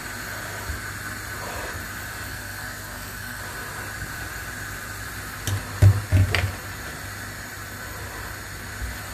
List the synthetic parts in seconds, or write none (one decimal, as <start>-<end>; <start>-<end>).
2.3-3.4